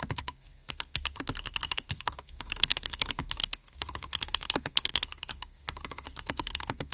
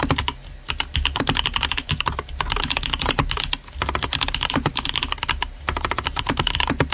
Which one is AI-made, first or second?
first